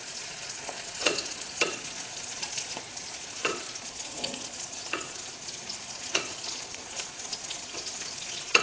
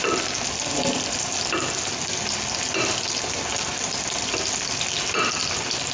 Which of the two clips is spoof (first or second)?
first